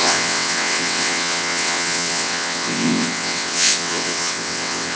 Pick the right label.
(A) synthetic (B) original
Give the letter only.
A